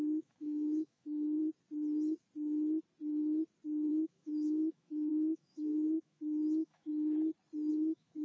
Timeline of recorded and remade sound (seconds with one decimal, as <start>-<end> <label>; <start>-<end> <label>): 0.0-1.4 remade; 1.4-3.9 recorded; 3.9-6.9 remade; 6.9-7.7 recorded; 7.7-8.2 remade